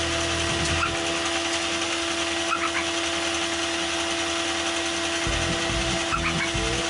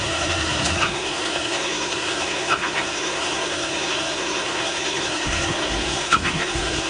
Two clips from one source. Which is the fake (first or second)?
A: second